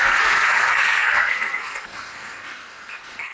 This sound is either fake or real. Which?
fake